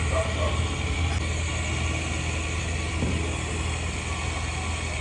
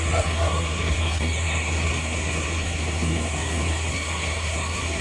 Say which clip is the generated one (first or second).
second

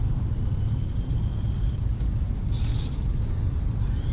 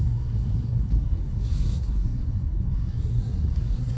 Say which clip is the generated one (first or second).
second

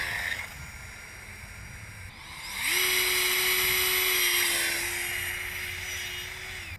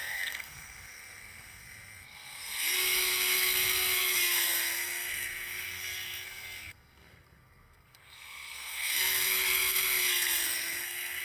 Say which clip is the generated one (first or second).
second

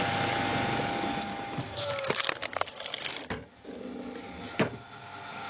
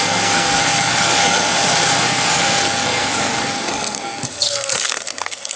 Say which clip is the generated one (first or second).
second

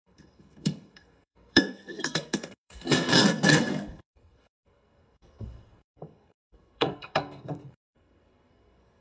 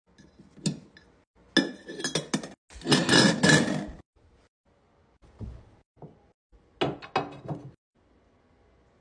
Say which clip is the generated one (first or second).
first